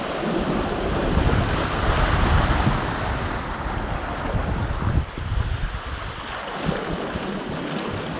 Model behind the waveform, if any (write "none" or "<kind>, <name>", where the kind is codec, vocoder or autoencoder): none